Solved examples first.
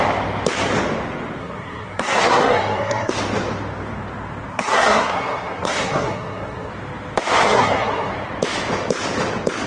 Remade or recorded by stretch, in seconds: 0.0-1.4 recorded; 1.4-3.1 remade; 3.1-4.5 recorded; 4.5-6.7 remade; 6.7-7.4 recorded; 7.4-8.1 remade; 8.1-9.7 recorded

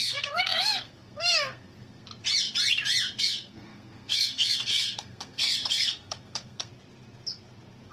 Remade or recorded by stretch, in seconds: 0.0-2.1 remade; 2.1-3.2 recorded; 3.2-6.7 remade; 6.7-7.9 recorded

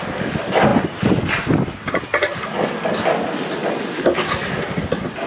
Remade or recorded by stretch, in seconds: 0.0-5.3 recorded

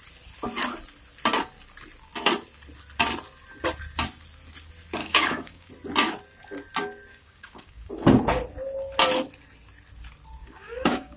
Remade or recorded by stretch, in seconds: 0.0-5.0 recorded; 5.0-5.7 remade; 5.7-7.1 recorded; 7.1-7.9 remade; 7.9-10.4 recorded; 10.4-11.2 remade